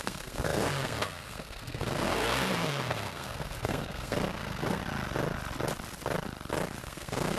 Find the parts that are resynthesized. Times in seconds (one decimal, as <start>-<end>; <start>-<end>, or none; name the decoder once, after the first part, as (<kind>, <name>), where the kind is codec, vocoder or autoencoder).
0.0-4.8 (codec, SNAC); 6.8-7.4